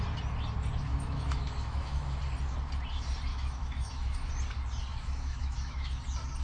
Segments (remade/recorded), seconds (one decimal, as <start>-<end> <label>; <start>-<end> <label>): 0.0-0.9 recorded; 0.9-2.2 remade; 2.2-3.3 recorded; 3.3-4.3 remade; 4.3-4.9 recorded; 4.9-6.0 remade; 6.0-6.4 recorded